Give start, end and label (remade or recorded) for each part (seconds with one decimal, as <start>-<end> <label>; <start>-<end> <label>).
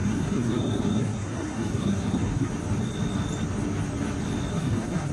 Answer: 0.0-2.5 remade; 2.5-4.5 recorded; 4.5-5.1 remade